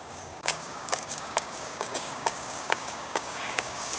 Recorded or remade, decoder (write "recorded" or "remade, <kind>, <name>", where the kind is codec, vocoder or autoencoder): remade, codec, DAC